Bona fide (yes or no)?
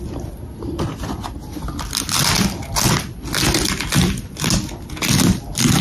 yes